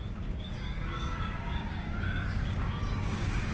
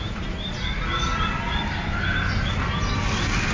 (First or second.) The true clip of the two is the second